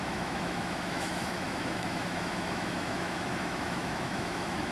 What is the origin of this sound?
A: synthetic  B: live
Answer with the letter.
A